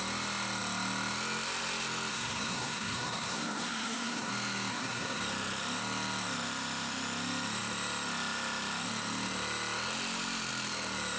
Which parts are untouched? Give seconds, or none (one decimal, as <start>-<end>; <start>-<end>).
0.0-2.1; 4.3-4.7; 5.2-11.2